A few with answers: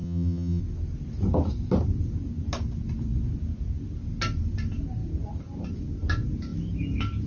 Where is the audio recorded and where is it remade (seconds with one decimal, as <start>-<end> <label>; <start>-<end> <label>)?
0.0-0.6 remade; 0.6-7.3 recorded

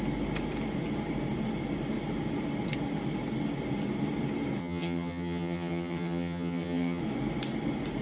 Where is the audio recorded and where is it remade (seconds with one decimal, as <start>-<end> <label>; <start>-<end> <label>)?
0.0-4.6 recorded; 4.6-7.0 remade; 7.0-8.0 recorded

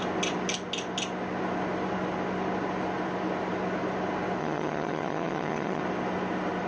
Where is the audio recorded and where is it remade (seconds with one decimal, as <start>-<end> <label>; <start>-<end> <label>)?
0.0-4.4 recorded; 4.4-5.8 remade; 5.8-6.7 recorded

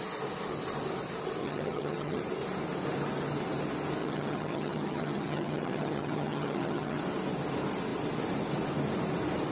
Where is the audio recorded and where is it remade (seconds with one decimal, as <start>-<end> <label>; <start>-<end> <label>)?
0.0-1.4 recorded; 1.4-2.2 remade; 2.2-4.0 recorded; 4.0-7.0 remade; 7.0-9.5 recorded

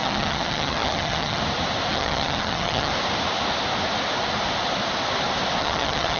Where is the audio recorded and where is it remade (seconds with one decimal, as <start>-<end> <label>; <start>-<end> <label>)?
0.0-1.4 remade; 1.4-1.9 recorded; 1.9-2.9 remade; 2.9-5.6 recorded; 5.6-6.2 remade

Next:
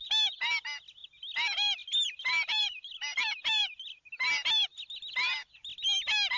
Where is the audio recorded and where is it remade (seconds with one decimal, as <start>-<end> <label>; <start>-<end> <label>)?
0.0-6.4 recorded